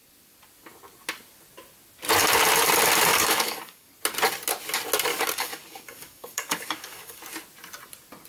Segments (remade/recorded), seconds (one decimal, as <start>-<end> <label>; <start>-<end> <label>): 0.0-3.1 recorded; 3.1-3.9 remade; 3.9-5.1 recorded; 5.1-7.2 remade; 7.2-8.3 recorded